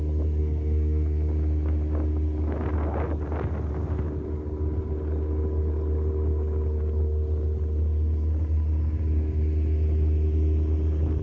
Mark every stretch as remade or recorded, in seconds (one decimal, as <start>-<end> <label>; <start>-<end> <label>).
0.0-0.4 recorded; 0.4-1.3 remade; 1.3-11.2 recorded